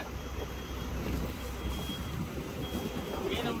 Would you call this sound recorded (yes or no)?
no